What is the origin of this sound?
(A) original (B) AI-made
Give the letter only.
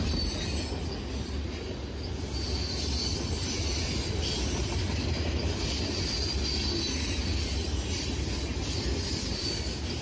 A